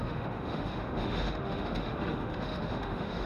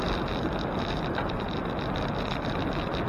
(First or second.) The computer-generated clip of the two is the first